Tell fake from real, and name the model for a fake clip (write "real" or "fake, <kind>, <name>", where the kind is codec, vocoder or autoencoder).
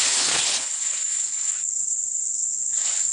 fake, codec, HILCodec